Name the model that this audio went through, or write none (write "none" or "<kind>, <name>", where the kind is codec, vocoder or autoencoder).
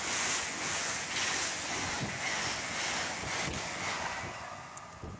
vocoder, Vocos